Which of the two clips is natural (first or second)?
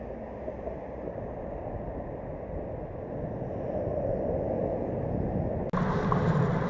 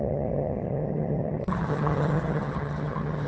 first